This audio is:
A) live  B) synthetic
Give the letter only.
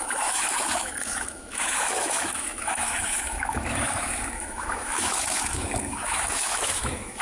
B